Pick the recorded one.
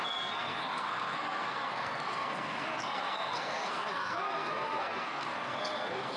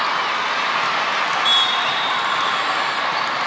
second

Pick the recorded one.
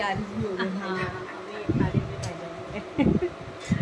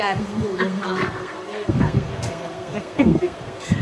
first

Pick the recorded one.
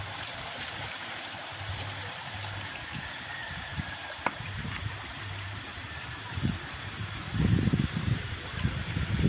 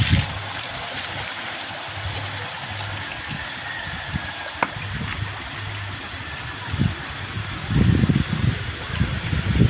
second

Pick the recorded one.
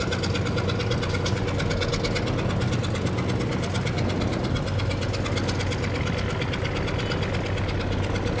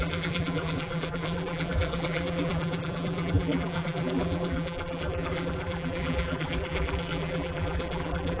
first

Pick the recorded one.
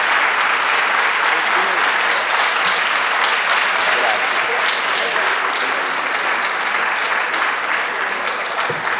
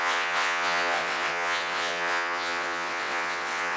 first